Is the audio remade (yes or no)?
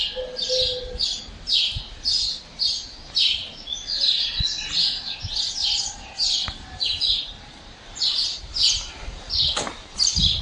no